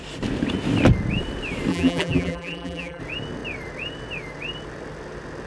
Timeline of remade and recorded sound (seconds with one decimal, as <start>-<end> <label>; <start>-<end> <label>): 0.0-1.7 recorded; 1.7-3.0 remade; 3.0-5.5 recorded